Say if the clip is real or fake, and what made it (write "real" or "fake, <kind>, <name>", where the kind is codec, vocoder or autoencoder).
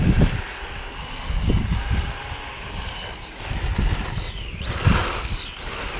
real